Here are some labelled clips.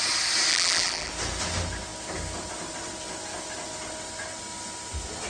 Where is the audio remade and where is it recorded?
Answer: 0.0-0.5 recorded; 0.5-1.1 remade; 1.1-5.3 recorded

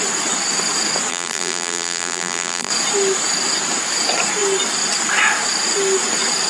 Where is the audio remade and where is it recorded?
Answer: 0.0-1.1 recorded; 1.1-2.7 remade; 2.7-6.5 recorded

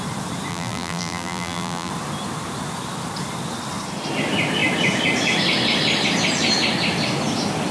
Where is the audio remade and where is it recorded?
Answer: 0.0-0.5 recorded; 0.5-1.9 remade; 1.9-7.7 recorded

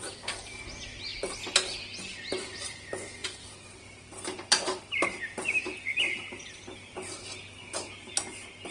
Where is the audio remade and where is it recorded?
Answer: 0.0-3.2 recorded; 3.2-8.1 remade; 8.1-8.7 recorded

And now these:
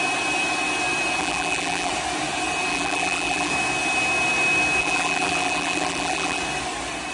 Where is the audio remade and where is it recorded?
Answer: 0.0-1.2 recorded; 1.2-1.9 remade; 1.9-2.7 recorded; 2.7-3.5 remade; 3.5-4.8 recorded; 4.8-6.4 remade; 6.4-7.1 recorded

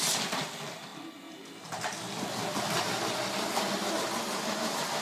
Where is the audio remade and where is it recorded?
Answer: 0.0-5.0 recorded